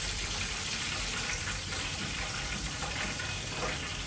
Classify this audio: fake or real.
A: fake